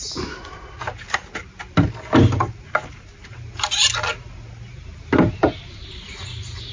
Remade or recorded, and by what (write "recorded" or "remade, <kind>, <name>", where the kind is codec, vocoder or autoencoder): recorded